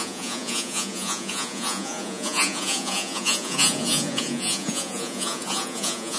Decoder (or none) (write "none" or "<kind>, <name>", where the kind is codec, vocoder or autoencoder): vocoder, Vocos